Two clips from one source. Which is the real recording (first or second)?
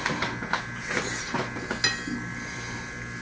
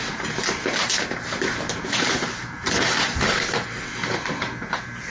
first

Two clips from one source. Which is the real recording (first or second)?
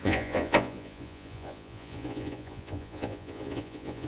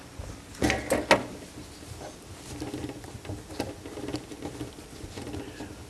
second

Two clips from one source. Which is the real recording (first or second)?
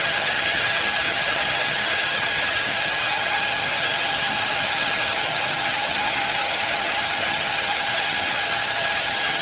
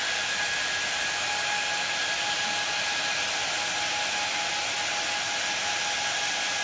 second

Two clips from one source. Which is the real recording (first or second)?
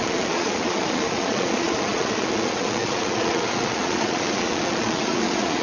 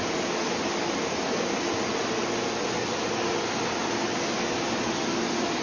second